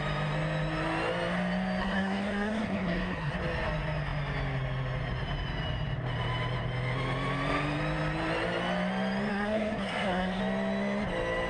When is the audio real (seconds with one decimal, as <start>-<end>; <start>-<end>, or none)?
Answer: 0.0-1.8; 3.3-9.3; 10.4-11.5